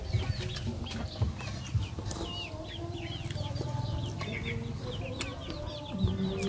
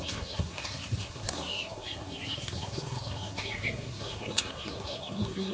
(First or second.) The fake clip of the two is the second